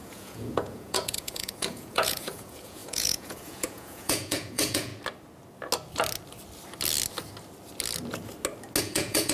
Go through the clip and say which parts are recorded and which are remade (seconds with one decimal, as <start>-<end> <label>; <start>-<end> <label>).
0.0-4.9 remade; 4.9-8.8 recorded; 8.8-9.3 remade